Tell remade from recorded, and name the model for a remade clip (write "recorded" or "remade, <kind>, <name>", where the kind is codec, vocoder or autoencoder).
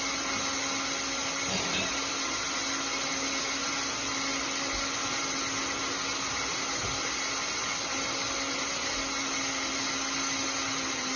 recorded